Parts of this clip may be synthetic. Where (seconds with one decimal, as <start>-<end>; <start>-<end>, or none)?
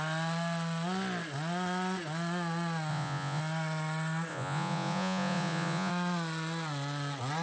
2.9-3.4; 4.3-5.9